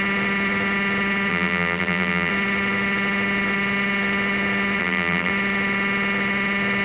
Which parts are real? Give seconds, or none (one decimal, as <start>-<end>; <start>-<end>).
0.0-1.3; 2.3-4.8; 5.3-6.8